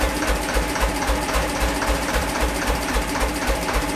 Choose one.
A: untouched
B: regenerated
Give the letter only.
B